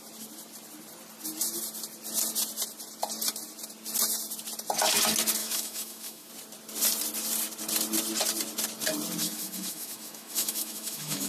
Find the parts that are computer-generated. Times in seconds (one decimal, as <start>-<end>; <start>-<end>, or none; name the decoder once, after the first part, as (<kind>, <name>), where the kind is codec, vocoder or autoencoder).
5.4-6.3 (autoencoder, DAC-VAE); 9.2-11.3